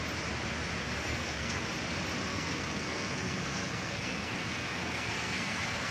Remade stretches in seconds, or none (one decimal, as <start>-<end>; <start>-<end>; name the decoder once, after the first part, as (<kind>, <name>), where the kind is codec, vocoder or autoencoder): 0.8-1.6 (codec, SNAC); 2.3-5.9